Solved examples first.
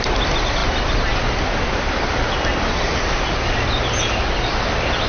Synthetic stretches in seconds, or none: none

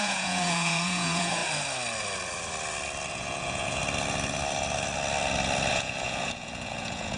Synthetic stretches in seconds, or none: 0.0-1.4 (vocoder, Vocos); 3.1-3.8; 5.7-7.2

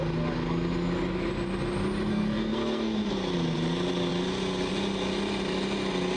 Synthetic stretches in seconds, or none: 2.1-3.1 (codec, SNAC)

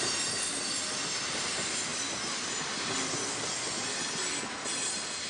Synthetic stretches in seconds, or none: none

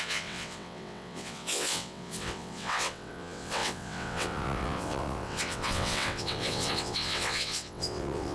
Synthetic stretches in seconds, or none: 0.0-8.3 (vocoder, WaveNeXt)

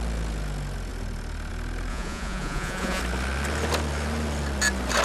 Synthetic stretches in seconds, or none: 1.9-3.0 (vocoder, Vocos)